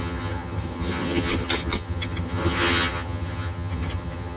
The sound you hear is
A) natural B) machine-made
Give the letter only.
B